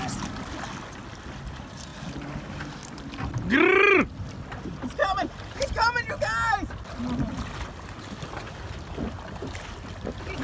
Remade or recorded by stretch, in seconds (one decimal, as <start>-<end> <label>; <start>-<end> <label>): 0.0-10.4 recorded